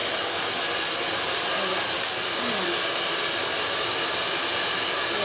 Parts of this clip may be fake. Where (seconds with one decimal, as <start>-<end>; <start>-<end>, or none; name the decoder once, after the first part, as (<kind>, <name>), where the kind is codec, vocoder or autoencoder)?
0.0-0.5 (codec, DAC)